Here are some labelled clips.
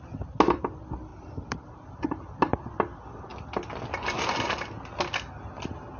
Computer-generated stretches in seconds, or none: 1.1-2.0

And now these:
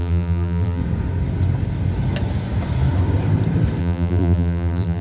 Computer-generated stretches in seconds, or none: 0.0-0.8; 3.8-5.0

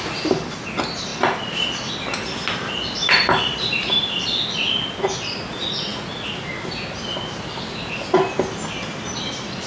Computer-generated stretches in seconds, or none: 1.1-1.9; 3.0-5.0

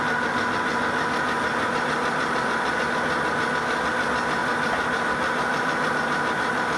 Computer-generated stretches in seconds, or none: 1.5-2.8; 4.4-5.9